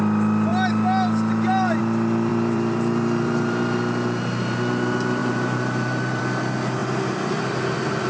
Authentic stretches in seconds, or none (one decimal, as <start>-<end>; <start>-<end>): 0.0-2.3; 3.8-5.2; 6.2-8.1